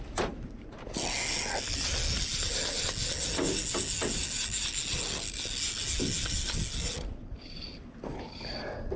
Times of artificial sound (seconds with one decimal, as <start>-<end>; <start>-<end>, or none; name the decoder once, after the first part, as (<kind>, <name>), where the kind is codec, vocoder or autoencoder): none